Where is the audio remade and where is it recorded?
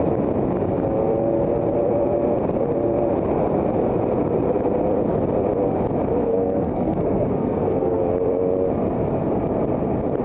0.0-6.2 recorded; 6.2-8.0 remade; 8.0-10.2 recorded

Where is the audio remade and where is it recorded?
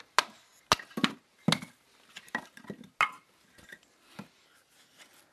0.0-5.3 recorded